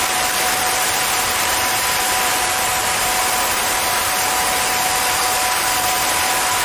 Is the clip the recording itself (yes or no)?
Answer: no